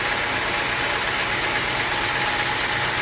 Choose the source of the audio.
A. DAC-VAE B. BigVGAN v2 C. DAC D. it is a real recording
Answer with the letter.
D